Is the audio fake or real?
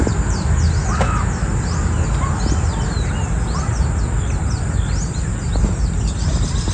real